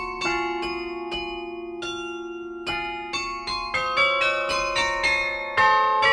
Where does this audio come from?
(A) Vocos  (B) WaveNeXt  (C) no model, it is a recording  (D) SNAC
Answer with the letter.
C